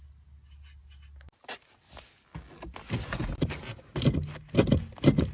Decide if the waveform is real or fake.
real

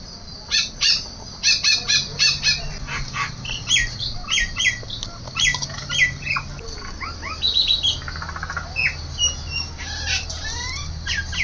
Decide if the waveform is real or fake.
real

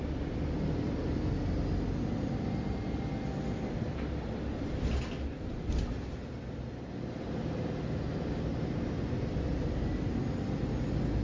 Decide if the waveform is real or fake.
real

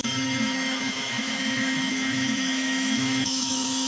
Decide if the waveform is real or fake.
fake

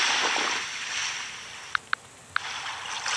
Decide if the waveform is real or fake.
real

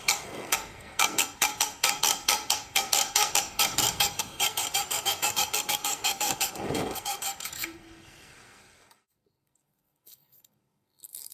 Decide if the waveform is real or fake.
fake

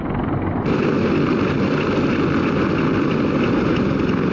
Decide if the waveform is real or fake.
real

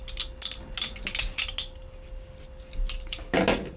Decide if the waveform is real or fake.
real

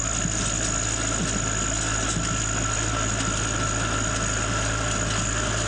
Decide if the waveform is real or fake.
real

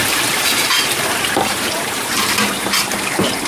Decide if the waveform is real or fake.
fake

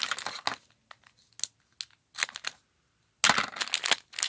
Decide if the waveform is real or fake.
real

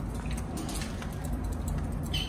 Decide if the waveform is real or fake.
real